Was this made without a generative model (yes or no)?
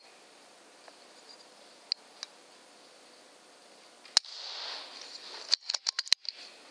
yes